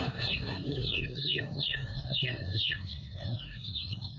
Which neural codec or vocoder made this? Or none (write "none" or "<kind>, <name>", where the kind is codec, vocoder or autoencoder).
codec, SNAC